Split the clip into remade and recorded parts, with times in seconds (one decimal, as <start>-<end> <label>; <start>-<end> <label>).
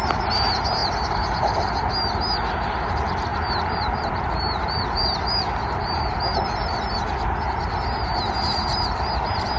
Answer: 0.0-0.8 recorded; 0.8-1.9 remade; 1.9-3.3 recorded; 3.3-6.5 remade; 6.5-8.7 recorded; 8.7-9.2 remade; 9.2-9.6 recorded